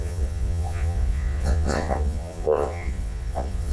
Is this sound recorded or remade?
remade